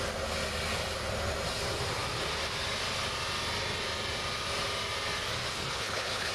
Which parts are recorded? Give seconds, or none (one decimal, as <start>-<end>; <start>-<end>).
0.0-5.5